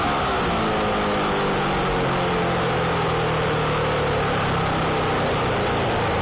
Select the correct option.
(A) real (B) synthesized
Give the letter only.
A